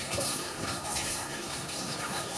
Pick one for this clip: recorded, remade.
remade